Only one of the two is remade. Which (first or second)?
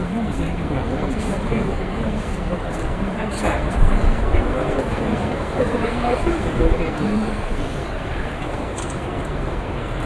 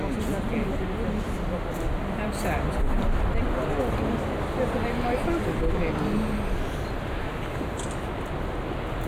first